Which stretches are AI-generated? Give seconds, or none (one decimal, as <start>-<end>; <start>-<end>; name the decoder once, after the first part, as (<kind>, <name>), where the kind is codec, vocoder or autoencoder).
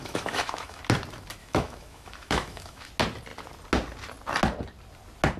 0.0-0.8 (autoencoder, DAC-VAE); 1.4-2.9